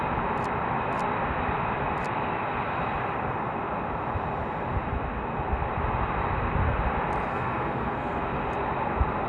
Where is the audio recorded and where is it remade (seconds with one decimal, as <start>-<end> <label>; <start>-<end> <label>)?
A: 0.0-7.3 recorded; 7.3-8.2 remade; 8.2-9.3 recorded